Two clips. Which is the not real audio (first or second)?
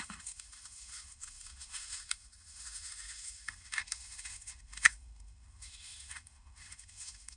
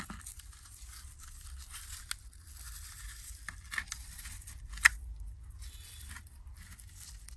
first